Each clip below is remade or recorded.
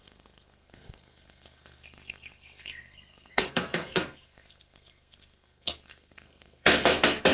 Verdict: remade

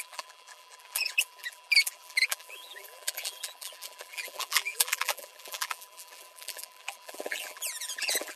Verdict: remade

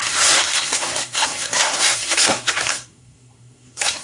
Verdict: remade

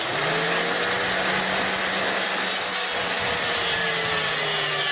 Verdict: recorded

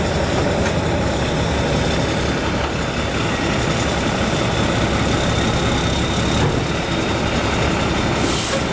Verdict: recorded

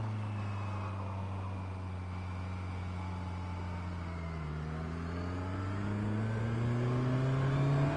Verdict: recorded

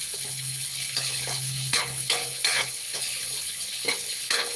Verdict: remade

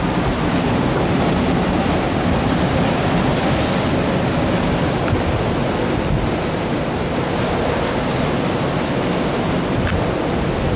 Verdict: recorded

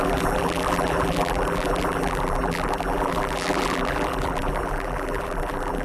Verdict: remade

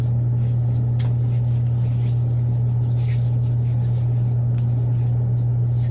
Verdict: recorded